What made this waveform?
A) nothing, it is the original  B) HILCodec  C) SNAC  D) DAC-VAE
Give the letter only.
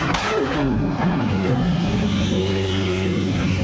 C